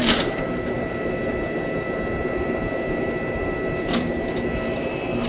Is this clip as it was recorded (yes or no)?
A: no